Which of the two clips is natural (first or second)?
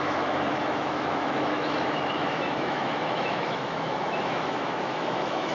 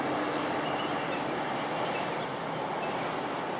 second